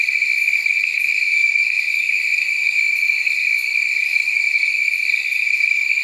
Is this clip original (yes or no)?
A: no